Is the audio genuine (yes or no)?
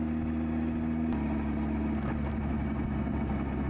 yes